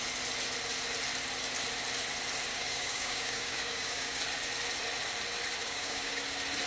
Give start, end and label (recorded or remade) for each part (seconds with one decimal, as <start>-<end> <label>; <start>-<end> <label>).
0.0-2.5 recorded; 2.5-4.2 remade; 4.2-5.6 recorded; 5.6-6.2 remade; 6.2-6.7 recorded

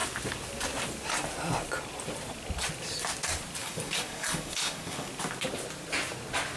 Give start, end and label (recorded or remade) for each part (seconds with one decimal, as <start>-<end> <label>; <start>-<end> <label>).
0.0-3.6 recorded; 3.6-5.1 remade; 5.1-6.6 recorded

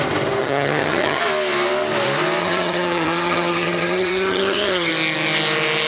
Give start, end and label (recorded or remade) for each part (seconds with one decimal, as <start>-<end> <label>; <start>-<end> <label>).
0.0-0.4 recorded; 0.4-1.2 remade; 1.2-2.4 recorded; 2.4-4.9 remade; 4.9-5.9 recorded